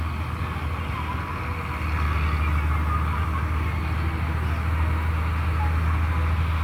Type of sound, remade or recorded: recorded